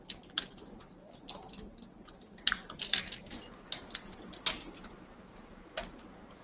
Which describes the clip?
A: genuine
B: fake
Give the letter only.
A